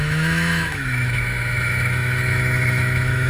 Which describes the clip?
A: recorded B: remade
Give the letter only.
B